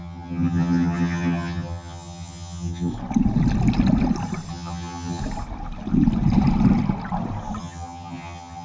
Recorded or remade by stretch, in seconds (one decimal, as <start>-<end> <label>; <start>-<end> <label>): 0.0-2.9 remade; 2.9-4.5 recorded; 4.5-5.2 remade; 5.2-7.6 recorded; 7.6-8.6 remade